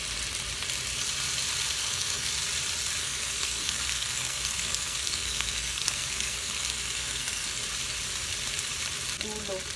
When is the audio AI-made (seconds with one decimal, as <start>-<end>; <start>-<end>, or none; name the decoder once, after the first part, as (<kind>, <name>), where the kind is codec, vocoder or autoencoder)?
1.8-2.3 (codec, SNAC); 3.0-7.6